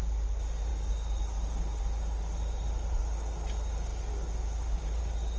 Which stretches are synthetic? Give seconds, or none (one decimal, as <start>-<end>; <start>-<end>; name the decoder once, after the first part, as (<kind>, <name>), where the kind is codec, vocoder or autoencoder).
none